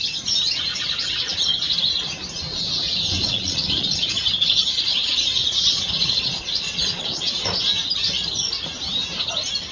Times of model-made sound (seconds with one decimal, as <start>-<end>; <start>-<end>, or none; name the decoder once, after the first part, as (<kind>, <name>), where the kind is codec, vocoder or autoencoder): 0.7-1.3 (vocoder, Vocos); 3.3-7.4